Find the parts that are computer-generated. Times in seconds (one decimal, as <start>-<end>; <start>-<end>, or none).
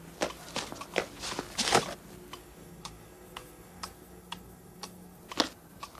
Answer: 2.4-5.2